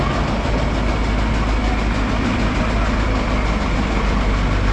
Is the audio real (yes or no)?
yes